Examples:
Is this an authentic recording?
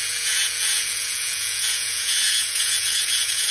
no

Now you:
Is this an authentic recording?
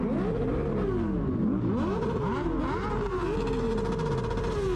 yes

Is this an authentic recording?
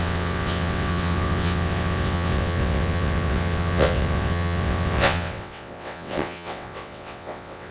no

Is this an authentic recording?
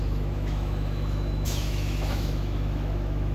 no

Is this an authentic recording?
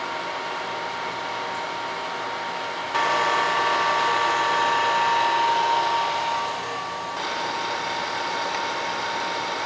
yes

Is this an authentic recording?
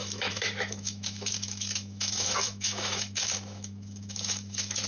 no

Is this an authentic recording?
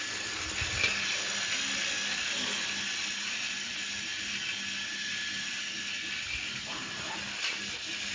yes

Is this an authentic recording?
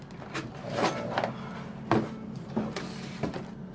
yes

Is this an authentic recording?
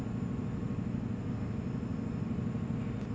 yes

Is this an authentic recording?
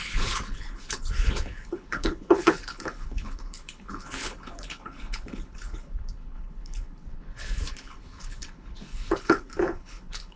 no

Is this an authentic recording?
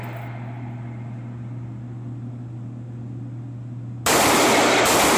yes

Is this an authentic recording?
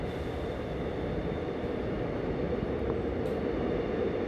yes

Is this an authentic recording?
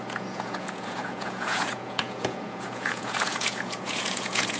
no